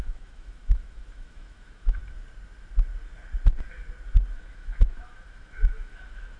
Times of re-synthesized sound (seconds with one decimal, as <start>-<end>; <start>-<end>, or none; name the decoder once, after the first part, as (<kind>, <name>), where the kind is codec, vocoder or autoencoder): 0.0-2.0 (autoencoder, DAC-VAE); 4.3-6.4